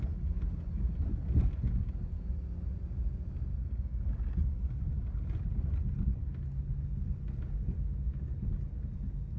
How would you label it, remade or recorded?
recorded